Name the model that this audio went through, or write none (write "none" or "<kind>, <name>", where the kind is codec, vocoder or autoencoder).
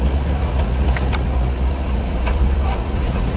vocoder, Vocos